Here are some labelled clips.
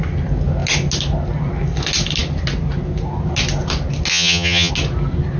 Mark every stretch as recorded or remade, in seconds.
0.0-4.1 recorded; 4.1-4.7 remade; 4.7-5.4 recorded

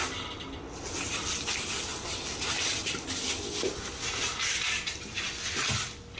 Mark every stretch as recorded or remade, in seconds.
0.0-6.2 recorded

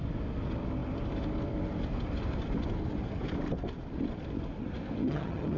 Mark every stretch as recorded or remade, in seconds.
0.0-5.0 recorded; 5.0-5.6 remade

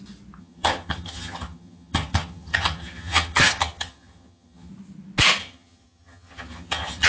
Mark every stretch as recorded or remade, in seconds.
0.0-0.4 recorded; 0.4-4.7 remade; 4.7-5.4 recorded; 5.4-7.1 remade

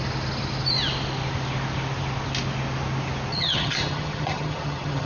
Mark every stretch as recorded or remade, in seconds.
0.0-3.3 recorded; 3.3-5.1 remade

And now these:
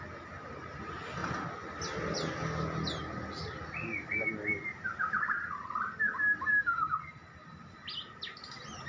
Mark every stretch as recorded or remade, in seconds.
0.0-8.9 recorded